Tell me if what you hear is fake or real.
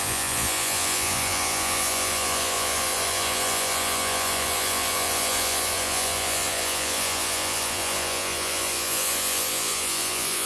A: fake